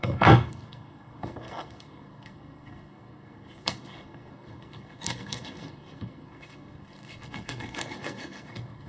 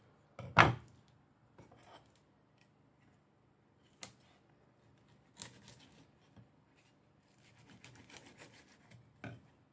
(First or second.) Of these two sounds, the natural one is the second